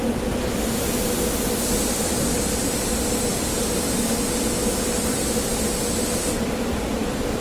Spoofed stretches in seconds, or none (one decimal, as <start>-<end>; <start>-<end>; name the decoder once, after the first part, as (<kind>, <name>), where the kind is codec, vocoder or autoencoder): 0.0-7.4 (vocoder, BigVGAN v2)